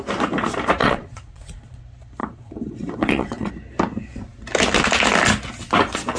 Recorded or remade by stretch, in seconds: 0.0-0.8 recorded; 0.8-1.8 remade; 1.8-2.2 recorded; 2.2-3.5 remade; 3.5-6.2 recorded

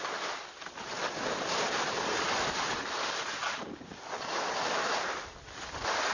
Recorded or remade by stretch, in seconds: 0.0-3.4 recorded; 3.4-5.2 remade; 5.2-6.1 recorded

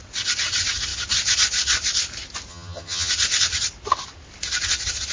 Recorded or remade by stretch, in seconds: 0.0-2.5 recorded; 2.5-3.1 remade; 3.1-5.1 recorded

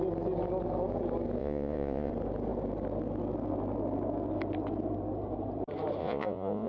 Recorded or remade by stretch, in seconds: 0.0-1.4 recorded; 1.4-2.1 remade; 2.1-6.0 recorded; 6.0-6.7 remade

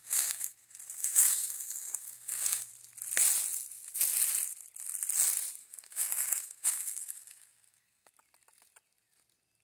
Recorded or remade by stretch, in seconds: 0.0-2.7 remade; 2.7-5.6 recorded; 5.6-8.1 remade; 8.1-9.6 recorded

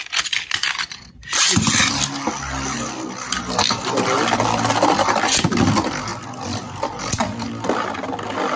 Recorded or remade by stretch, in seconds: 0.0-8.6 recorded

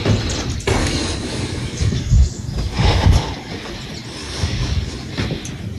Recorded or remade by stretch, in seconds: 0.0-0.8 recorded; 0.8-3.7 remade; 3.7-4.2 recorded; 4.2-5.1 remade; 5.1-5.8 recorded